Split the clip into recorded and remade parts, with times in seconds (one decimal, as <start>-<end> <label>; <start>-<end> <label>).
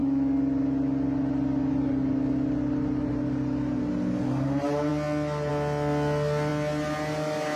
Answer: 0.0-7.6 recorded